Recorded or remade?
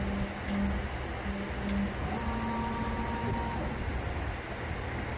recorded